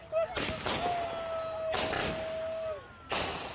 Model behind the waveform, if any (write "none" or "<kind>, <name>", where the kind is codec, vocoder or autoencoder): none